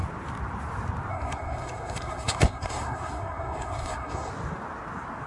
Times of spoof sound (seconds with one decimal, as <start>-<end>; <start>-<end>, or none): 1.1-4.3